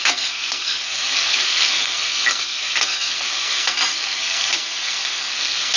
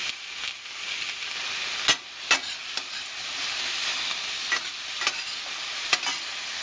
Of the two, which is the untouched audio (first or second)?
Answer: second